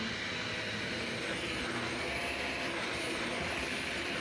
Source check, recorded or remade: recorded